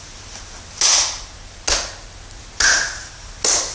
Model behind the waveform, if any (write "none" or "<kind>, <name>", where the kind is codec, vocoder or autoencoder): none